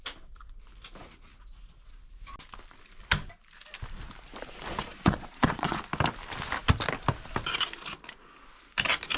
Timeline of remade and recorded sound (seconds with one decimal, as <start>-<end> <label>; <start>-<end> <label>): 0.0-4.9 recorded; 4.9-5.8 remade; 5.8-9.2 recorded